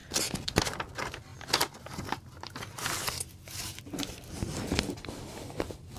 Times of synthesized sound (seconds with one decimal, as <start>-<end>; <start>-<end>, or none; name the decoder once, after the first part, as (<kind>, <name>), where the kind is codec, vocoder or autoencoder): 0.0-0.6 (vocoder, BigVGAN v2)